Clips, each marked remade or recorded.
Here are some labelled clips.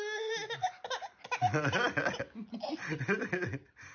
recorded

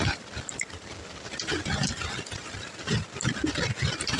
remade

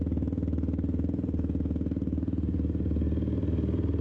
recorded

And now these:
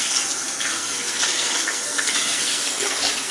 remade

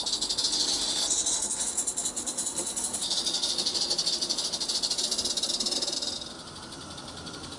recorded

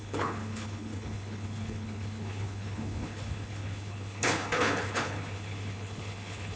remade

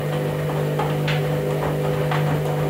recorded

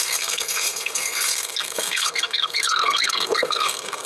remade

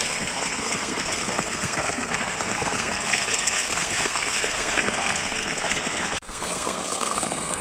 remade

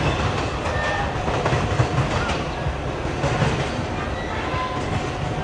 recorded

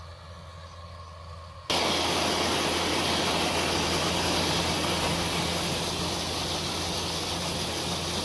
recorded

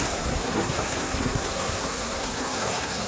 remade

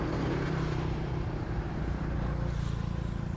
remade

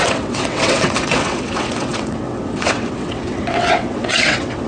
remade